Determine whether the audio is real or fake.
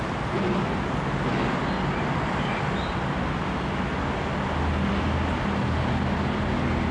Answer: real